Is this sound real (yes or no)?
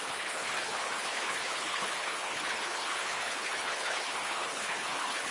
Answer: no